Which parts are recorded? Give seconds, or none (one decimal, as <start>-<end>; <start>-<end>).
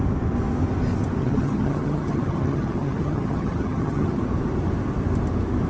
0.0-1.2; 4.2-5.7